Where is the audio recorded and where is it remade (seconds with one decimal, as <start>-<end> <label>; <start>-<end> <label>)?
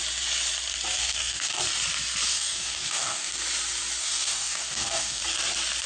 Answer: 0.0-1.0 recorded; 1.0-1.6 remade; 1.6-2.3 recorded; 2.3-3.3 remade; 3.3-4.0 recorded; 4.0-5.2 remade; 5.2-5.9 recorded